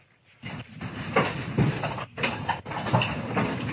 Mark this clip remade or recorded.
recorded